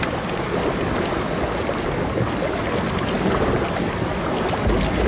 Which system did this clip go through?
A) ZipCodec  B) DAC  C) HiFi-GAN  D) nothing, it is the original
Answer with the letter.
D